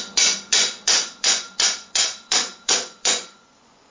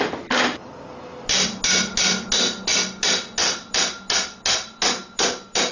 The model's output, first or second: first